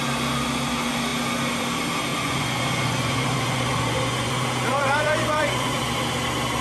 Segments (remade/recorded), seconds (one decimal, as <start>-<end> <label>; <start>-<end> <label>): 0.0-2.1 recorded; 2.1-4.3 remade; 4.3-4.7 recorded; 4.7-5.8 remade; 5.8-6.6 recorded